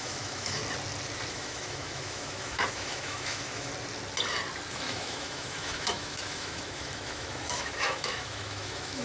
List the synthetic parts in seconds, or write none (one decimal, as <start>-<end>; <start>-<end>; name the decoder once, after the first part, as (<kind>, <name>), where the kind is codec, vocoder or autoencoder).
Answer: 0.0-0.6 (autoencoder, DAC-VAE); 1.3-3.7; 4.7-9.0